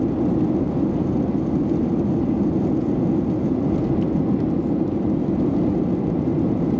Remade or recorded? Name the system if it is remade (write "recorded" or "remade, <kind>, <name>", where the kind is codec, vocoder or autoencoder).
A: recorded